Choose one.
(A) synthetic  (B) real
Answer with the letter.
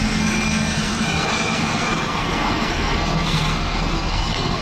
A